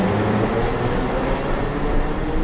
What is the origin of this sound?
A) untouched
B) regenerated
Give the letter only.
A